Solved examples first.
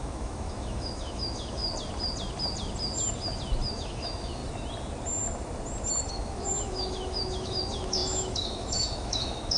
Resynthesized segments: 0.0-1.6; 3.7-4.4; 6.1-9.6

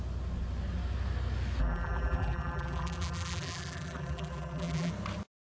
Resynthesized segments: 1.6-4.9